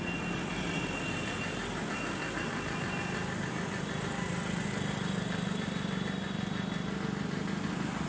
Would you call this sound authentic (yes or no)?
yes